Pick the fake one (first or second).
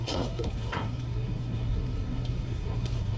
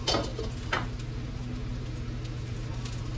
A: first